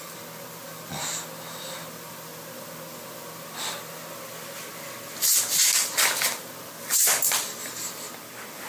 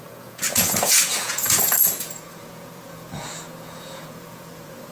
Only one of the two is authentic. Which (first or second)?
first